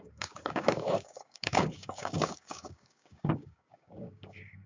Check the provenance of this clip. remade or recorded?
remade